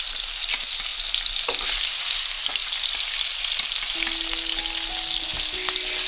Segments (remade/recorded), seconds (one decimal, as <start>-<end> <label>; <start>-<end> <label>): 0.0-2.6 recorded; 2.6-3.6 remade; 3.6-6.1 recorded